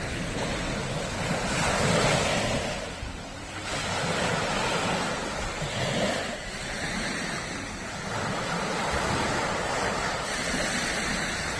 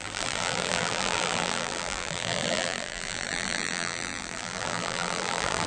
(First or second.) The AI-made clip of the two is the second